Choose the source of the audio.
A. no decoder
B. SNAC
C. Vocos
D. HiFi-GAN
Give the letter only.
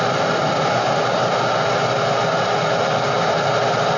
A